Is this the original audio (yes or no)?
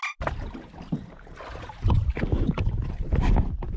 yes